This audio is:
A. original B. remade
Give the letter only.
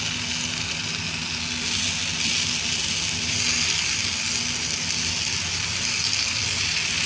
A